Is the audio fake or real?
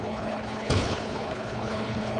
fake